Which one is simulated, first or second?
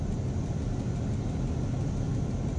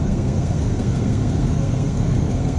second